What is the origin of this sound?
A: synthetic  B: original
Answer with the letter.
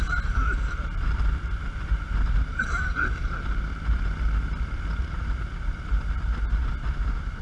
B